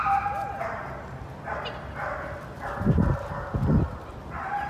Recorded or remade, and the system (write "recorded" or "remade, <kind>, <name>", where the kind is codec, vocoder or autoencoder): recorded